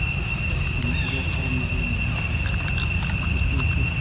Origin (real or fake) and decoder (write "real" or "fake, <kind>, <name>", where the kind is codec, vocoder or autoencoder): real